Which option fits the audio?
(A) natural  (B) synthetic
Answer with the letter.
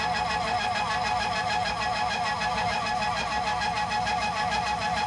A